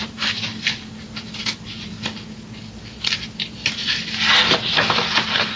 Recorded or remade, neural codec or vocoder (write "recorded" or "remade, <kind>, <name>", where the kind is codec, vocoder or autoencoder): recorded